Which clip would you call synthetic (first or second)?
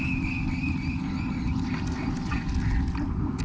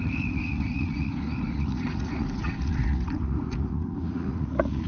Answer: second